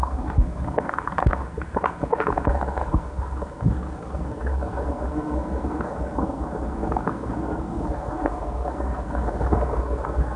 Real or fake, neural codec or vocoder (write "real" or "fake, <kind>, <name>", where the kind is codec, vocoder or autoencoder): fake, codec, SNAC